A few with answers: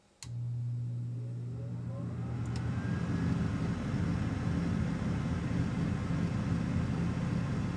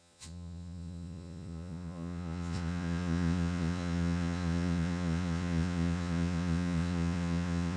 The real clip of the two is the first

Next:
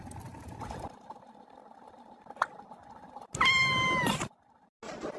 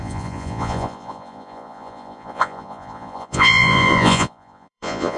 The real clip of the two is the first